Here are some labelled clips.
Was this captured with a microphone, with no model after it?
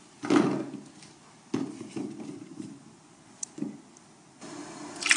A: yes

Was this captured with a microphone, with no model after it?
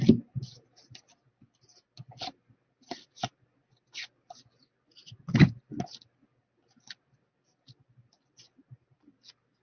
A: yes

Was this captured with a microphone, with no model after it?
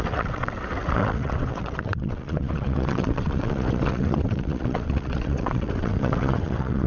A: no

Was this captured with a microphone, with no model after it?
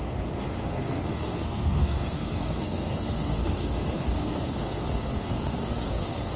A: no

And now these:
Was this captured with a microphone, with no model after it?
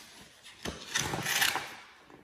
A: yes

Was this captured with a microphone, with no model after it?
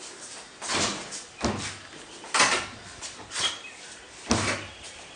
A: yes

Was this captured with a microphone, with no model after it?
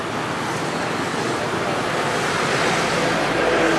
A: yes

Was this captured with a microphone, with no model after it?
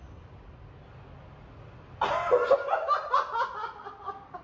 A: yes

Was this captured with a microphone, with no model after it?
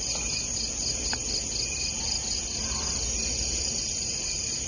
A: yes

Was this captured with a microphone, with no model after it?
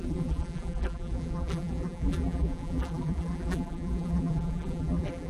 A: no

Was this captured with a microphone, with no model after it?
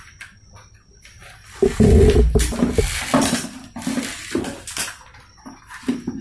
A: no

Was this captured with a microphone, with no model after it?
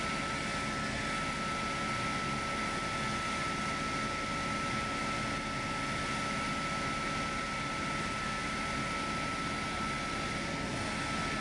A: yes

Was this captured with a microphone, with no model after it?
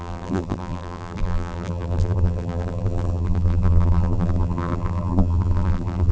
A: no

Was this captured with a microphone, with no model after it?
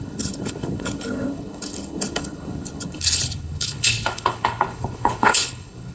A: no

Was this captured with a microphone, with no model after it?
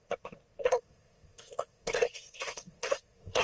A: no